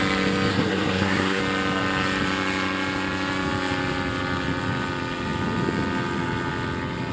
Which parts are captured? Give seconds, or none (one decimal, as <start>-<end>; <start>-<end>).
0.0-0.5; 1.4-7.1